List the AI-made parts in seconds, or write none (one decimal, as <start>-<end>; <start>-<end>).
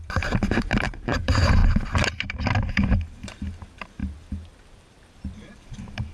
0.0-1.6; 2.7-6.1